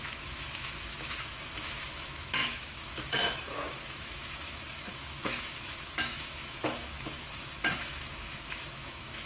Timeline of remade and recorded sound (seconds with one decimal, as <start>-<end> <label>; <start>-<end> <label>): 0.0-9.3 remade